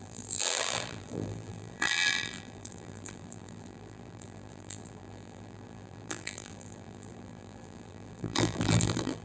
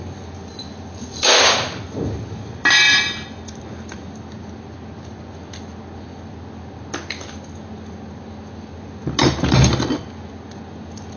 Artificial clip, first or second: first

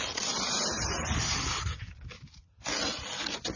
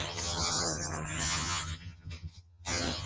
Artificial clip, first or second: second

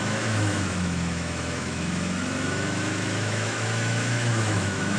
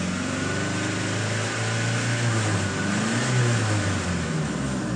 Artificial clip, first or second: first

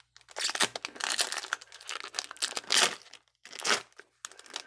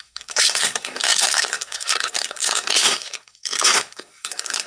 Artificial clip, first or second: second